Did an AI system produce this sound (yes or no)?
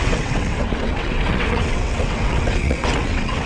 yes